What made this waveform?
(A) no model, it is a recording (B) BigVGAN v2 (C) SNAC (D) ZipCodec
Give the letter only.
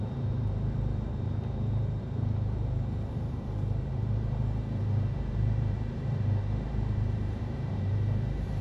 B